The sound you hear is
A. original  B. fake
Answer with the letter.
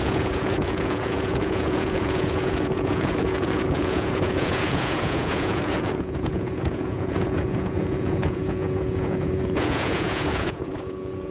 B